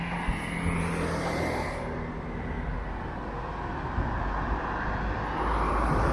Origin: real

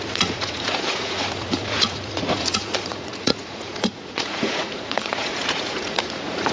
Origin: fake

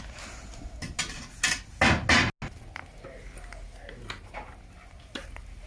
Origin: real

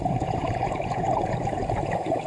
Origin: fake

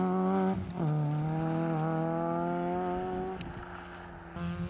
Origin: real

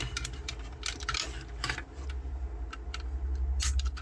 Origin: real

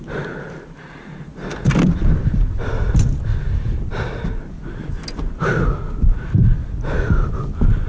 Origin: real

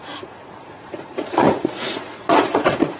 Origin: fake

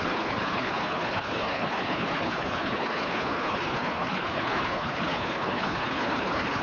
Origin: fake